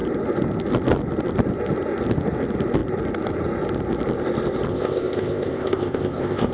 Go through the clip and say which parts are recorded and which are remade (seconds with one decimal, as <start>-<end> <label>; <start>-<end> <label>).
0.0-4.7 recorded; 4.7-6.5 remade